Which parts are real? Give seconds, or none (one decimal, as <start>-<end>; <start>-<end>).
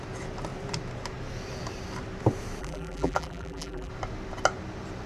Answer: 0.0-2.6; 3.9-5.1